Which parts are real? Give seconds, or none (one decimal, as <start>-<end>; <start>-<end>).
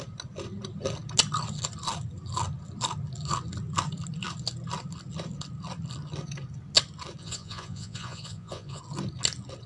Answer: 0.0-7.2; 8.8-9.7